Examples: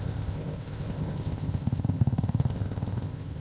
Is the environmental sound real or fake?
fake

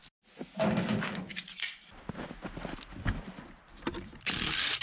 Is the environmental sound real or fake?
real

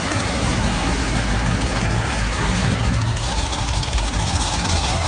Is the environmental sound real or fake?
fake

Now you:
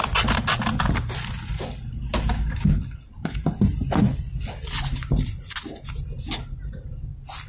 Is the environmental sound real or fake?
real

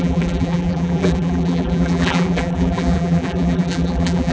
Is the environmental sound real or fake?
fake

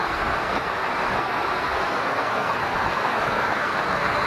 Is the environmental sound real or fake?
fake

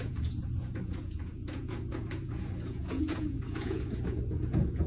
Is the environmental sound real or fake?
fake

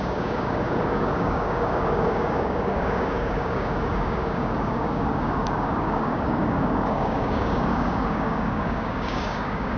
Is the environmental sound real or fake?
fake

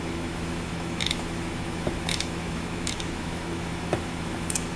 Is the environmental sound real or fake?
fake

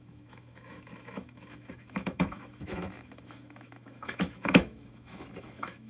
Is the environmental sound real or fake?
fake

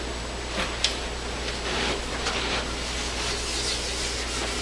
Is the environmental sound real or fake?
real